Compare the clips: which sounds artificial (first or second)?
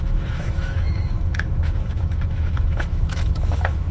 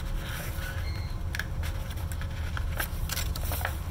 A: first